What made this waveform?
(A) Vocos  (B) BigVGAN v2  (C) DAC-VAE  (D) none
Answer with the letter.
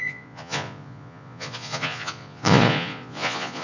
A